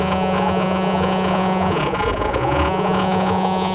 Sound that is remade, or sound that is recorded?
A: remade